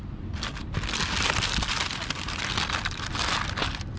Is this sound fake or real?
real